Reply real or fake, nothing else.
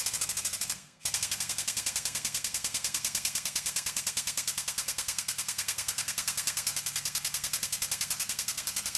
fake